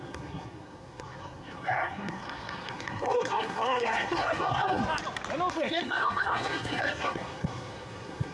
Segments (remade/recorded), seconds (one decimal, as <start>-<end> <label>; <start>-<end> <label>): 0.0-4.8 remade; 4.8-5.5 recorded; 5.5-8.3 remade